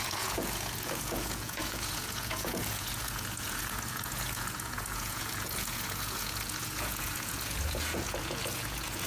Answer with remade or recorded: remade